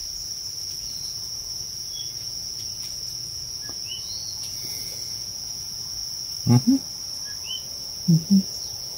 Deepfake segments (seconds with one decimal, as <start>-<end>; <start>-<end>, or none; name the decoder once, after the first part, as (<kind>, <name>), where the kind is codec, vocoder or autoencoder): 0.8-6.0 (vocoder, Vocos); 7.4-9.0